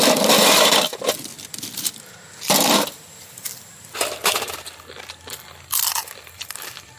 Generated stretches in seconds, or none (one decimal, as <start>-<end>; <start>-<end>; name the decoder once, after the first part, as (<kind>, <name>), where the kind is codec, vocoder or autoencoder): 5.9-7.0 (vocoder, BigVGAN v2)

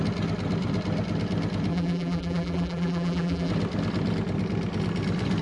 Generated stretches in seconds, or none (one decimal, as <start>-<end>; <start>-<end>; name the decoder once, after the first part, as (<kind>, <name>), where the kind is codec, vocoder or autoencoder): 1.7-3.5 (vocoder, BigVGAN v2)

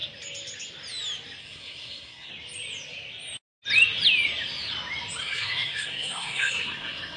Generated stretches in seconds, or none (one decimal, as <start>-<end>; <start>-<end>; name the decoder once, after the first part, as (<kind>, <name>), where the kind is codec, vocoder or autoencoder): 1.4-2.3 (codec, SNAC); 5.2-7.2

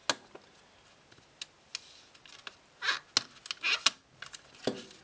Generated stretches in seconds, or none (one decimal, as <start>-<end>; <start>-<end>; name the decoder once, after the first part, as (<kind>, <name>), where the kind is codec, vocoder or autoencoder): none

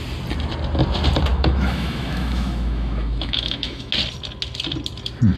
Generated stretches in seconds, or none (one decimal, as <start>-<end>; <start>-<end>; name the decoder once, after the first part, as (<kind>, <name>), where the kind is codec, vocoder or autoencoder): 1.3-3.9 (autoencoder, DAC-VAE)

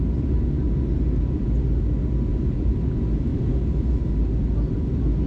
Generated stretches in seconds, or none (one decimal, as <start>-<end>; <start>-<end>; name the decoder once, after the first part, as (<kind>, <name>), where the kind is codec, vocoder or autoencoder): 2.3-2.9 (vocoder, BigVGAN v2); 3.3-4.0